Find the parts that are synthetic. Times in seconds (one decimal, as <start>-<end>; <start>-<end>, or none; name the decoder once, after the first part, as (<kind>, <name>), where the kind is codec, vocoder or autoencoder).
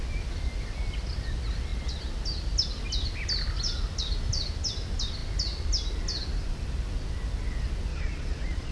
7.9-8.7 (vocoder, Vocos)